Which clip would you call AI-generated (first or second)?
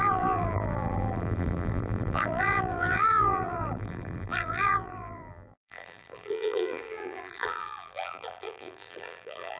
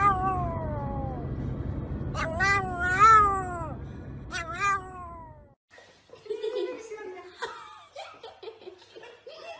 first